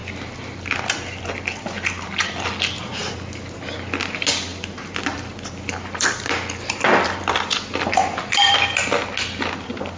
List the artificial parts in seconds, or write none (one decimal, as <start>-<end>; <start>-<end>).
0.0-1.2; 4.5-8.8